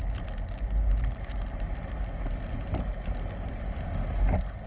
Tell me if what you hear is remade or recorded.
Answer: recorded